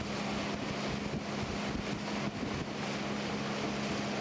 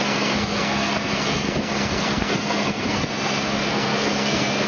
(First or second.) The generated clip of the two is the second